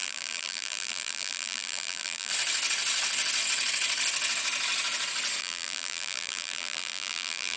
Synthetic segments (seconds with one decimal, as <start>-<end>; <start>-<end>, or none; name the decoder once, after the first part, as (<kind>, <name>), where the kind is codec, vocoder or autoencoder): 0.0-2.3 (vocoder, BigVGAN v2); 5.4-7.6